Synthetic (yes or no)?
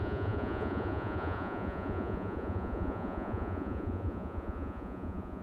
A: yes